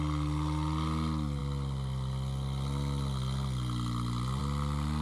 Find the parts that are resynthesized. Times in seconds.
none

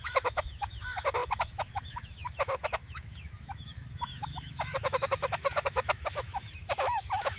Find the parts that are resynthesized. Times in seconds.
0.0-7.4 (autoencoder, DAC-VAE)

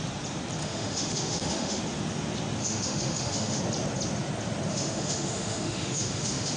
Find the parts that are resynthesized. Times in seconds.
0.6-1.8 (autoencoder, DAC-VAE); 2.6-3.6; 4.7-6.6

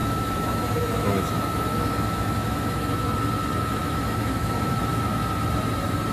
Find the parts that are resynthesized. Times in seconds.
0.0-3.1 (autoencoder, DAC-VAE); 3.8-5.1

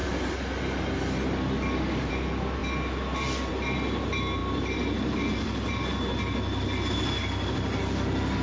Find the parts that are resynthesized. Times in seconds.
none